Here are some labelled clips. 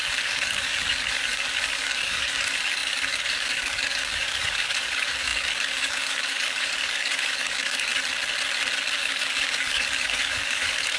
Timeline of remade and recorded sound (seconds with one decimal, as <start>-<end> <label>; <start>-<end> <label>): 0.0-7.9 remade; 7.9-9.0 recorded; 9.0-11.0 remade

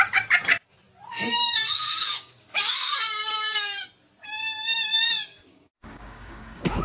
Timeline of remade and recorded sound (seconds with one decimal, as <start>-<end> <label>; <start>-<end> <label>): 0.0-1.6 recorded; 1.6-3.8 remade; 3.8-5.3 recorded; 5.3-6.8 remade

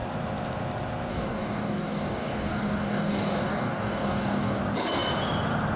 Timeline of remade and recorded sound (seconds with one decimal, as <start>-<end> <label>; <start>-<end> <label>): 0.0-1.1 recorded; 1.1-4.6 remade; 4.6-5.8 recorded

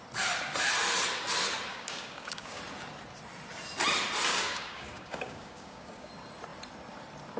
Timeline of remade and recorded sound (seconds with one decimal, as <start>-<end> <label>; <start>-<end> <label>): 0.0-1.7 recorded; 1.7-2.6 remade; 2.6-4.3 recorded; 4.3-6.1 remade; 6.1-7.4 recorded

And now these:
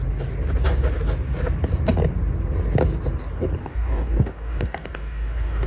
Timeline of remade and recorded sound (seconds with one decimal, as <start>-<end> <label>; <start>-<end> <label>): 0.0-3.6 recorded; 3.6-5.7 remade

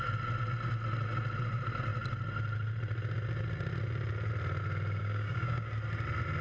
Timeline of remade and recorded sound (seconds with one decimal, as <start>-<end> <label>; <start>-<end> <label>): 0.0-5.0 recorded; 5.0-5.7 remade; 5.7-6.4 recorded